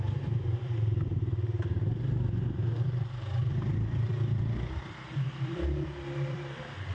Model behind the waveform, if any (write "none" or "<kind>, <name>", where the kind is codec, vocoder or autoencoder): vocoder, BigVGAN v2